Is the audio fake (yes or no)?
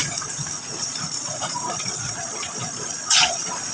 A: yes